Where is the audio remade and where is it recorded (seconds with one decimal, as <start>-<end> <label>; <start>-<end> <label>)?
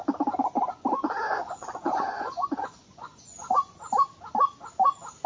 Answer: 0.0-1.3 recorded; 1.3-3.8 remade; 3.8-5.3 recorded